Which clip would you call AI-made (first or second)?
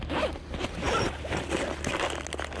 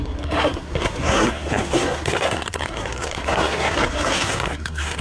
second